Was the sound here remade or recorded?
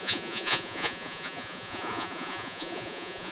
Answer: remade